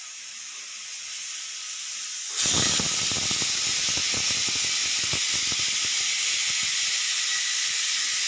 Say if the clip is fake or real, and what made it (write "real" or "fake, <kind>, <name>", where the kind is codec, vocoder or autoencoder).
real